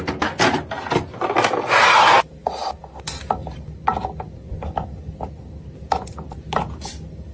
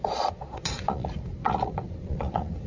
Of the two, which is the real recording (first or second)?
first